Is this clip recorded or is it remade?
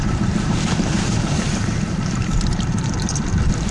remade